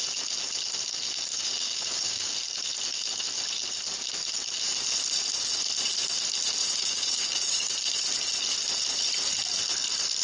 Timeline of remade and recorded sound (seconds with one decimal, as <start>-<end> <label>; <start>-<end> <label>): 0.0-1.3 recorded; 1.3-2.3 remade; 2.3-6.6 recorded; 6.6-7.7 remade; 7.7-10.2 recorded